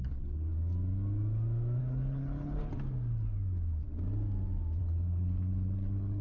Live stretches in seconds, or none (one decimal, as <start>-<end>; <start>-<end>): 0.5-1.8; 2.6-4.8